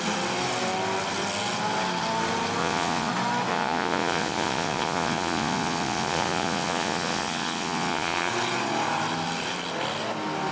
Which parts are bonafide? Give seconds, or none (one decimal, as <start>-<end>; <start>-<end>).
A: 0.0-2.6; 3.1-3.5; 8.3-10.5